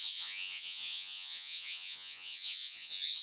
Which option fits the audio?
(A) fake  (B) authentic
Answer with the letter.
A